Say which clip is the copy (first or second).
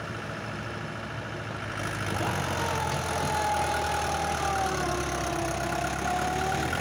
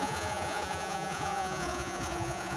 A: second